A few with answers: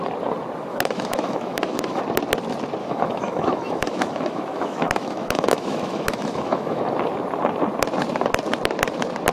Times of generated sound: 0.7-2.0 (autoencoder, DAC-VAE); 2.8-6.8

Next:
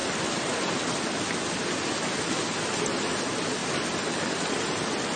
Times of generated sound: 0.0-0.7 (vocoder, BigVGAN v2)

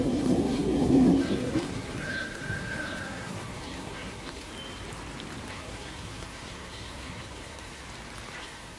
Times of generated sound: 0.0-4.5 (codec, SNAC); 5.5-7.8; 8.4-8.8

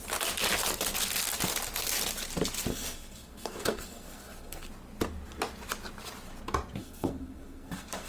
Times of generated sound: 2.7-4.7 (codec, SNAC); 6.8-8.1